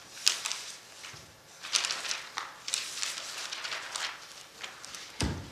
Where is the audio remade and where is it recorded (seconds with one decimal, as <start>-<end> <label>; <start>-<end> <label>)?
0.0-5.5 recorded